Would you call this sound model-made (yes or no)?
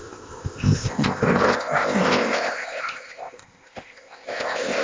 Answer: yes